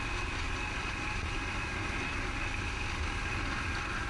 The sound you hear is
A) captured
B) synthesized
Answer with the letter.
A